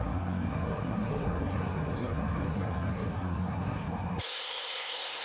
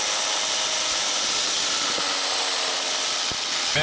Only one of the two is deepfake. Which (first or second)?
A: first